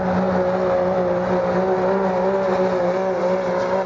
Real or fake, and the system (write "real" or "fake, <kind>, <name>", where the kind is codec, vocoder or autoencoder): real